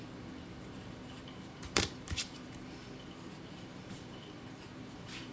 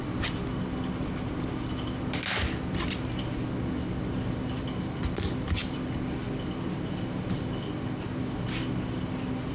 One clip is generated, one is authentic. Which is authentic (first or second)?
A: second